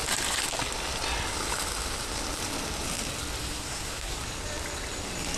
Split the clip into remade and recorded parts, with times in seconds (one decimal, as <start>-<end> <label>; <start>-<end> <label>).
0.0-3.4 recorded; 3.4-4.2 remade; 4.2-5.4 recorded